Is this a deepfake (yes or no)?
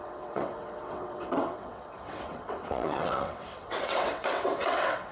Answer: yes